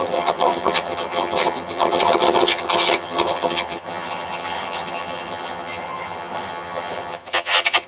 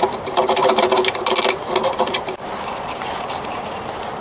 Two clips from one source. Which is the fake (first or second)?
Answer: first